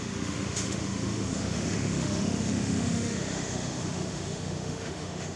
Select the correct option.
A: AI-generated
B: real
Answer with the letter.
A